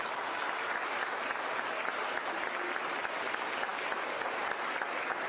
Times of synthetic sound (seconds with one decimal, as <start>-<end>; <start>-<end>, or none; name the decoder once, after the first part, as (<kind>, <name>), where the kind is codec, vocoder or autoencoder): none